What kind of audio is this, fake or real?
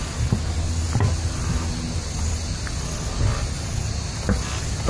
real